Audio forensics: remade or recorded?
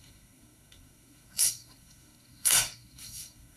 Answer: remade